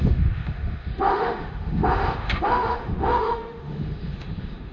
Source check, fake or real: fake